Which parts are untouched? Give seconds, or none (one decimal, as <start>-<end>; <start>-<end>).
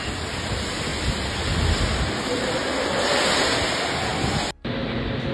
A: 0.0-5.3